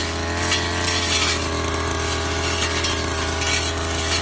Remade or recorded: recorded